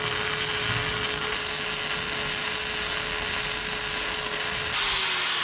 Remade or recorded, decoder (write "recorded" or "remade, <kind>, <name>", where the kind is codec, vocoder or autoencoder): recorded